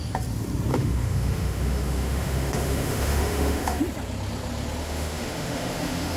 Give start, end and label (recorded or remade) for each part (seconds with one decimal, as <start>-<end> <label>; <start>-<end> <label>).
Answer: 0.0-0.7 recorded; 0.7-3.8 remade; 3.8-4.8 recorded; 4.8-6.2 remade